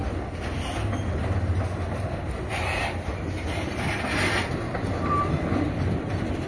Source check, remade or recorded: recorded